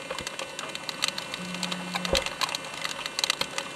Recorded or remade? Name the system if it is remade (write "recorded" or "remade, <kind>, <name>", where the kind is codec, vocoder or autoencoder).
recorded